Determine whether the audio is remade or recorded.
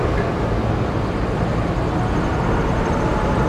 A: recorded